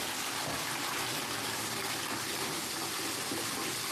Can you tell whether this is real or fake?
real